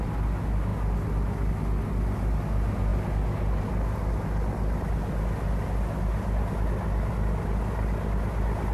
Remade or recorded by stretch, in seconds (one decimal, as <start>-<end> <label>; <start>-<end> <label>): 0.0-8.7 recorded